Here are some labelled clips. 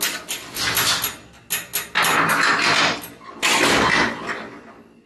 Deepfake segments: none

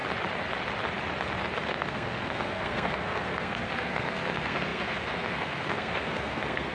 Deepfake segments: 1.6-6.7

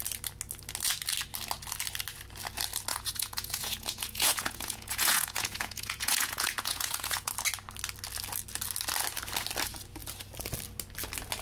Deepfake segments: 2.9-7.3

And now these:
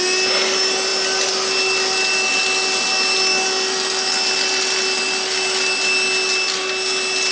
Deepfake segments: none